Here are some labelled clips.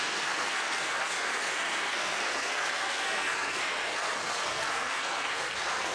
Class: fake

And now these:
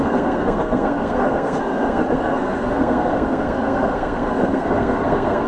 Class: fake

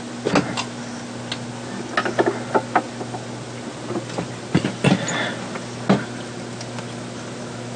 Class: real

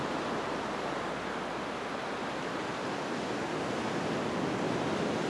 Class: real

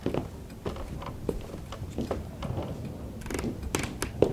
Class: real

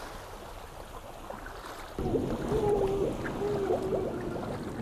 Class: real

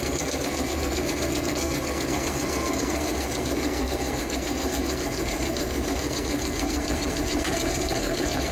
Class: fake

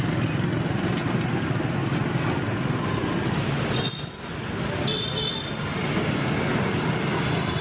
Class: real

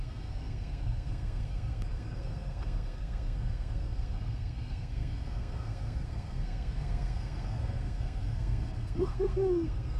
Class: fake